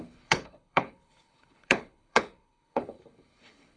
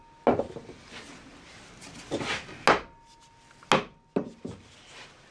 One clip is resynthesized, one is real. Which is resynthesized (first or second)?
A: first